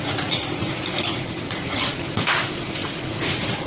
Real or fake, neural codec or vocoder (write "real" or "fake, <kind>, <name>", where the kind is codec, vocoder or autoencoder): fake, vocoder, Vocos